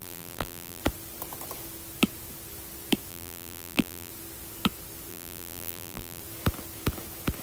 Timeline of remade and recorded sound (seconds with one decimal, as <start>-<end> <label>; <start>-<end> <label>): 0.0-0.8 remade; 0.8-3.1 recorded; 3.1-4.1 remade; 4.1-5.1 recorded; 5.1-6.2 remade; 6.2-7.4 recorded